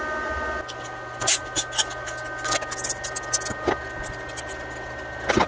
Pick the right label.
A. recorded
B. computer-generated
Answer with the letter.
A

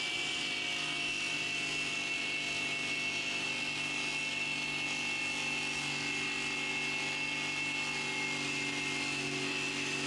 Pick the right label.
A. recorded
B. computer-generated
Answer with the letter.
A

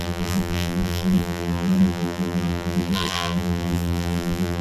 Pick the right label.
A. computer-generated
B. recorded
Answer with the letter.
A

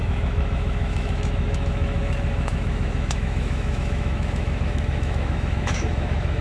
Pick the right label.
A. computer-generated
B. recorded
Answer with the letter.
A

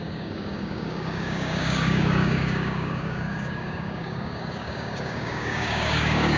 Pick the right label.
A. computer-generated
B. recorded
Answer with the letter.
A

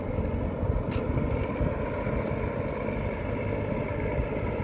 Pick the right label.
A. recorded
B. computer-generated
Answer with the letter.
A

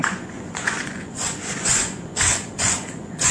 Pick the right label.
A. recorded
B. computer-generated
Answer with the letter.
B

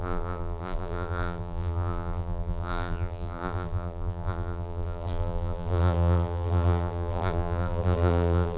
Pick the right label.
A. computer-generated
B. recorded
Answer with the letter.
A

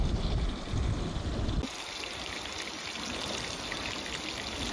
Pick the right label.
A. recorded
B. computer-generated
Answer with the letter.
A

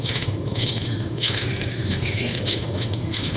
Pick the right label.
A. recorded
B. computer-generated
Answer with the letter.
B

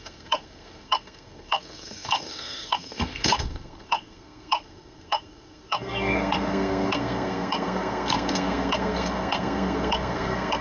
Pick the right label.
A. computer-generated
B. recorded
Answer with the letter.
A